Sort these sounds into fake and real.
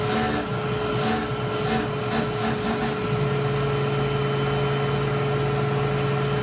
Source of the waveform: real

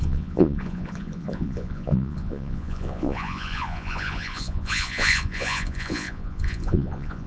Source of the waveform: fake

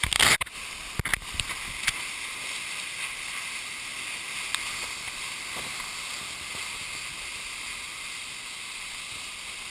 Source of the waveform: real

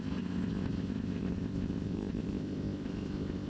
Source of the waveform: fake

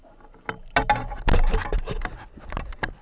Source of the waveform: real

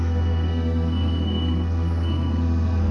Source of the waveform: fake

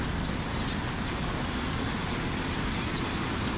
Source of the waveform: real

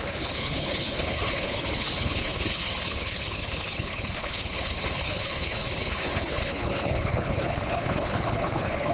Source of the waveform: fake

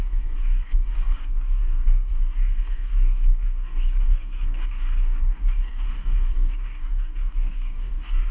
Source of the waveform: fake